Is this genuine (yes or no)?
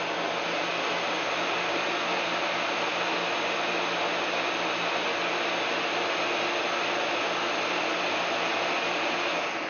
yes